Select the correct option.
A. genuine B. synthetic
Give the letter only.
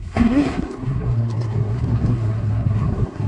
B